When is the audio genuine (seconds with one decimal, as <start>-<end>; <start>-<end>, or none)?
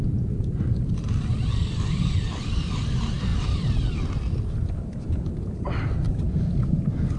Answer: 0.0-7.2